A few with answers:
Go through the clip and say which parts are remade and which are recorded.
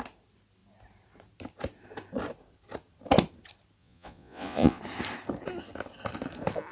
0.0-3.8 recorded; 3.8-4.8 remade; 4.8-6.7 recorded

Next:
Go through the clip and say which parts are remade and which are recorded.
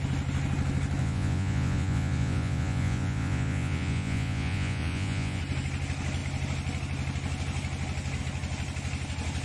0.0-1.0 recorded; 1.0-5.4 remade; 5.4-9.4 recorded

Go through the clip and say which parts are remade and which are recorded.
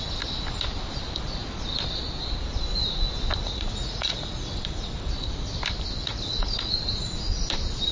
0.0-3.4 recorded; 3.4-4.5 remade; 4.5-6.0 recorded; 6.0-7.3 remade; 7.3-7.9 recorded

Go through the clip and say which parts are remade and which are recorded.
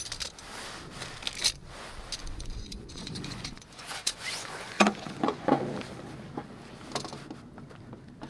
0.0-2.2 recorded; 2.2-5.6 remade; 5.6-8.3 recorded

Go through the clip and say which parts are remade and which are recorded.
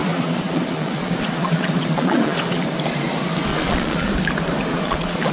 0.0-2.6 remade; 2.6-3.5 recorded; 3.5-4.1 remade; 4.1-4.7 recorded; 4.7-5.3 remade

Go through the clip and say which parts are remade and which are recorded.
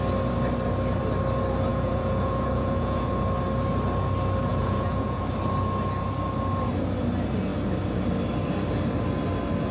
0.0-1.7 recorded; 1.7-3.1 remade; 3.1-4.5 recorded; 4.5-5.2 remade; 5.2-9.7 recorded